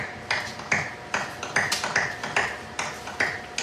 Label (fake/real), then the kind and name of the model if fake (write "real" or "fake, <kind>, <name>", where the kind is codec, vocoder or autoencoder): real